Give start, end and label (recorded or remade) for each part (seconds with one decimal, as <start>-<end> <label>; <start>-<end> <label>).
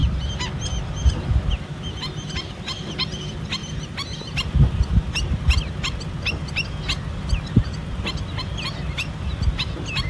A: 0.0-1.5 recorded; 1.5-3.6 remade; 3.6-5.1 recorded; 5.1-10.1 remade